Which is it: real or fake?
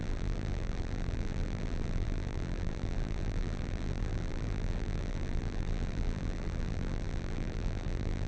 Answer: fake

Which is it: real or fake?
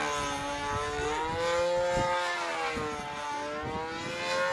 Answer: real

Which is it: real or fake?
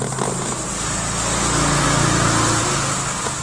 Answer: real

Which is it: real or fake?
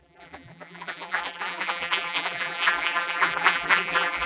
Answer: fake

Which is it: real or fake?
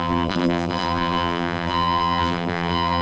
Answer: fake